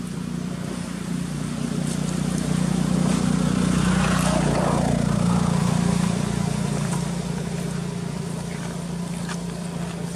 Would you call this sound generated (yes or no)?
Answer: no